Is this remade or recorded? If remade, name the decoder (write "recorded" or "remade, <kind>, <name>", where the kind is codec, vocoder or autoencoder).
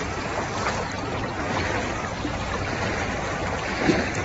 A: recorded